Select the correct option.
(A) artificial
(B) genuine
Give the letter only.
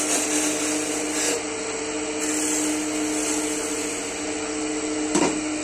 B